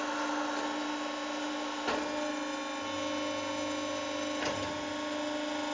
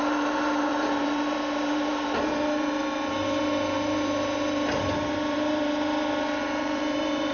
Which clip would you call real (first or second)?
first